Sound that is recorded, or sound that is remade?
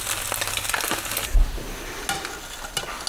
recorded